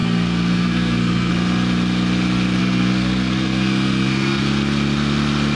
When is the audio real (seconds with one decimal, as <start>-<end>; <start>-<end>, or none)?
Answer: 1.3-2.6; 4.4-5.5

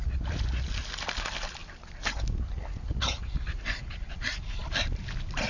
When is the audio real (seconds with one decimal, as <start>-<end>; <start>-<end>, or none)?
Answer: 0.0-5.5